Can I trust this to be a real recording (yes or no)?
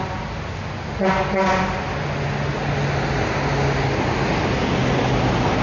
yes